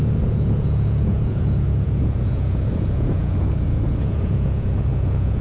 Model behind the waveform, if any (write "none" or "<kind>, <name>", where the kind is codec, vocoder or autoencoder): vocoder, Vocos